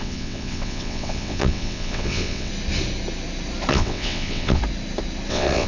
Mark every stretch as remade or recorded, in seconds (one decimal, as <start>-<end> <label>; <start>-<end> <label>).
0.0-2.5 remade; 2.5-3.7 recorded; 3.7-4.6 remade; 4.6-5.3 recorded; 5.3-5.7 remade